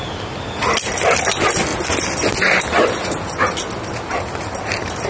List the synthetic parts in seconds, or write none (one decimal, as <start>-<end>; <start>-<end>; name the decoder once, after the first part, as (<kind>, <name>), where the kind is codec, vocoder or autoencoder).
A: none